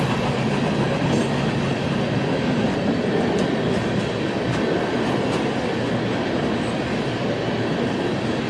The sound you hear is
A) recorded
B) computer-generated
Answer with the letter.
A